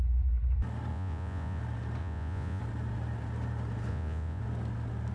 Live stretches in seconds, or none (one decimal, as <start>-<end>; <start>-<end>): 0.0-0.9; 1.6-2.0; 2.6-3.9; 4.4-5.1